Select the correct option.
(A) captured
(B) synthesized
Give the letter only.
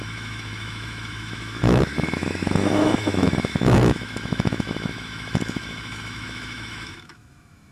B